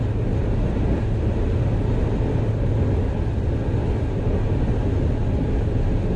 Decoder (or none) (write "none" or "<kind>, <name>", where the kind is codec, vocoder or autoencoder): none